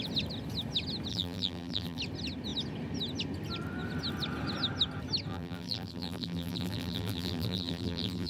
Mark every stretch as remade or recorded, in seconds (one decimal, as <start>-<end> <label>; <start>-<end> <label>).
0.0-1.1 recorded; 1.1-2.0 remade; 2.0-5.3 recorded; 5.3-8.3 remade